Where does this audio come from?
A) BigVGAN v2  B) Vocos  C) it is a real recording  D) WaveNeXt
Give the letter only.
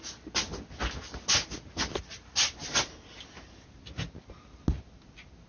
C